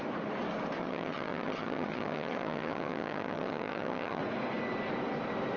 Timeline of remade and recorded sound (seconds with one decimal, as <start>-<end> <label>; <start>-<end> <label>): 0.0-0.8 recorded; 0.8-4.2 remade; 4.2-5.6 recorded